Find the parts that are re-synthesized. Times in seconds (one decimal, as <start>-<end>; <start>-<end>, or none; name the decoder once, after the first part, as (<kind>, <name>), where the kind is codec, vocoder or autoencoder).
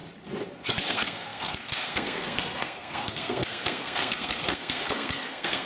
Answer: 0.9-5.7 (codec, SNAC)